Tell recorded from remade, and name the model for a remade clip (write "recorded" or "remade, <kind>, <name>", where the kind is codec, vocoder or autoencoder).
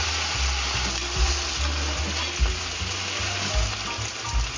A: recorded